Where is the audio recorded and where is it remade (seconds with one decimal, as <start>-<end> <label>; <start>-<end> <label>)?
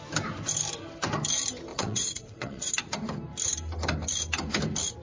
0.0-1.7 recorded; 1.7-2.7 remade; 2.7-5.0 recorded